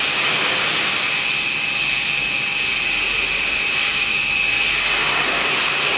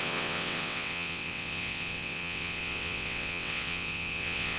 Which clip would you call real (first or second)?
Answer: first